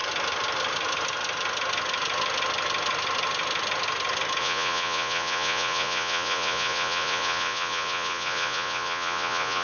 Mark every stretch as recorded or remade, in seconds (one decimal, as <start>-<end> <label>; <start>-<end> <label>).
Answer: 0.0-4.4 recorded; 4.4-9.6 remade